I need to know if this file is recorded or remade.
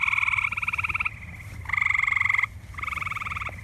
recorded